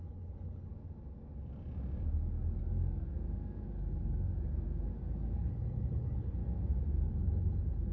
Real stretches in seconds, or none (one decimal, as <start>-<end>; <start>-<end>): 0.7-5.4; 6.4-7.1